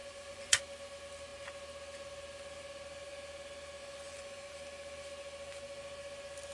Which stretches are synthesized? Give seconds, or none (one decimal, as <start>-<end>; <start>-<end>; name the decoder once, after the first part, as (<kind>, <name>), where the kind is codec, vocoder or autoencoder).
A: 0.0-0.6 (vocoder, Vocos); 3.8-4.5